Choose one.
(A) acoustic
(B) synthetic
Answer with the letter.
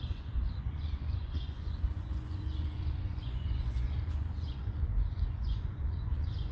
B